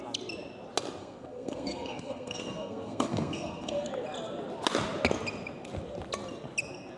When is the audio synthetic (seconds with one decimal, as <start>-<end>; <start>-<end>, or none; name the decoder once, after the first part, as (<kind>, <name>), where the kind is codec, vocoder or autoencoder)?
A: 1.0-3.9 (codec, SNAC)

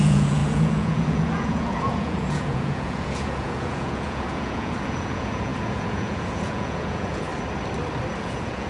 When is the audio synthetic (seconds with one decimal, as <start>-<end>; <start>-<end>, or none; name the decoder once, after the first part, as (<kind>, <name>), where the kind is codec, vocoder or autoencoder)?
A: 0.0-7.3 (vocoder, Vocos); 8.2-8.7